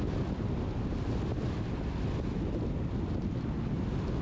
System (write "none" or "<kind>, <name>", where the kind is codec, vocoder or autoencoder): none